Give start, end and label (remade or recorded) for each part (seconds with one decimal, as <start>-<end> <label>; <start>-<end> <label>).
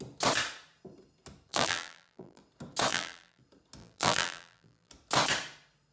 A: 0.0-1.5 recorded; 1.5-2.4 remade; 2.4-2.9 recorded; 2.9-3.4 remade; 3.4-3.8 recorded; 3.8-4.9 remade; 4.9-5.9 recorded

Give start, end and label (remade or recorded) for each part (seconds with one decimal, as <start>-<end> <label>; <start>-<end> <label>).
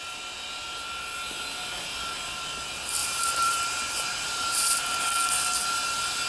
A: 0.0-3.0 recorded; 3.0-4.8 remade; 4.8-6.3 recorded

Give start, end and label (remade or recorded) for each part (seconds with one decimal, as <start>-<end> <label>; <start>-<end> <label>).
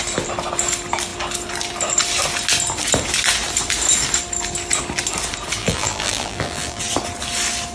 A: 0.0-5.6 recorded; 5.6-6.8 remade; 6.8-7.7 recorded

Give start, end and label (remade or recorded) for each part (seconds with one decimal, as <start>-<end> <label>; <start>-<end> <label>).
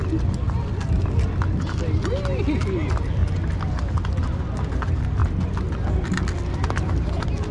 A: 0.0-7.5 recorded